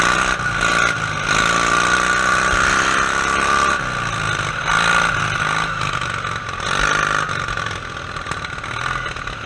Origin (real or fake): real